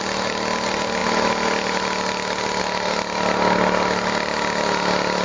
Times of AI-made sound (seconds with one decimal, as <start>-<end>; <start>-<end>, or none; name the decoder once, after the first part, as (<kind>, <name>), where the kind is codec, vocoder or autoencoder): none